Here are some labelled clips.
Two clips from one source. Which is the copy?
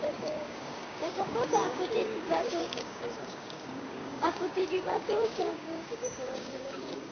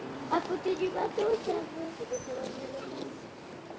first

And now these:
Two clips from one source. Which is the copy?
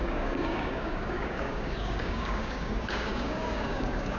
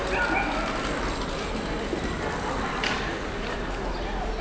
first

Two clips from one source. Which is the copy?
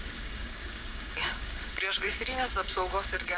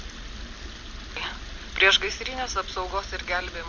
first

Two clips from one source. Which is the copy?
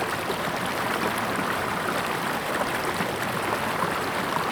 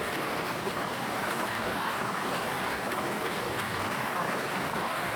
second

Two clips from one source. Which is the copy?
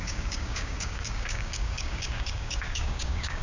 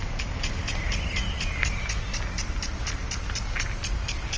first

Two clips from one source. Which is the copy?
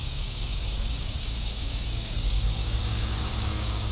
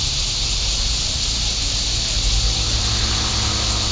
first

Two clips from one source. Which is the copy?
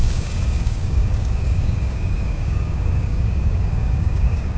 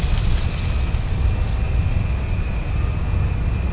first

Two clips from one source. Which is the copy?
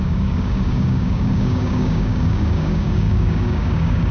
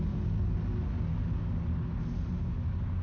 first